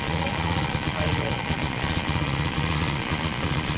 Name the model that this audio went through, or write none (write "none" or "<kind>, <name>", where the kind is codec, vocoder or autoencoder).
vocoder, Vocos